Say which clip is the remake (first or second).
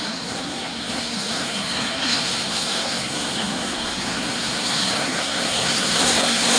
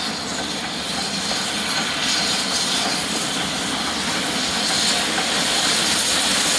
first